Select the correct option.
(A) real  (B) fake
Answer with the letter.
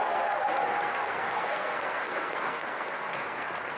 B